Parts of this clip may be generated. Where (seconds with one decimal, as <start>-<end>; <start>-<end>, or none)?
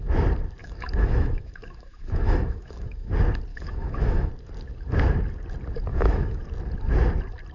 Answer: 0.6-3.1; 3.5-4.3; 5.9-6.4